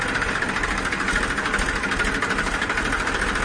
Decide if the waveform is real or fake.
real